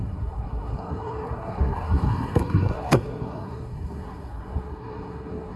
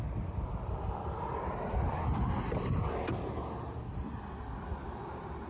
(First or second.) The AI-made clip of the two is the first